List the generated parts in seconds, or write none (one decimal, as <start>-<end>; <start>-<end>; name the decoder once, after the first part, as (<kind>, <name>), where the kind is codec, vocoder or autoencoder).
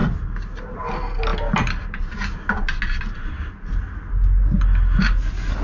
none